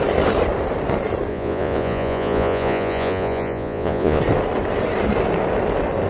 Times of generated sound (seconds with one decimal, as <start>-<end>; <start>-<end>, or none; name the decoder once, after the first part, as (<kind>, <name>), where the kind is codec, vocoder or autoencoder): 1.3-4.2 (vocoder, Vocos)